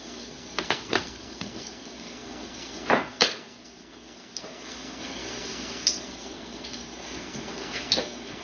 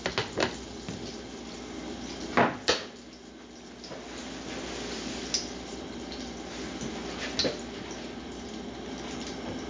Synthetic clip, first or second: first